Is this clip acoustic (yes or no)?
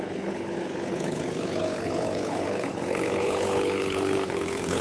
no